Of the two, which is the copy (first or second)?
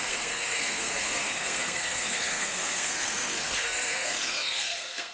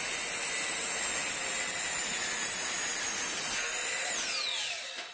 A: first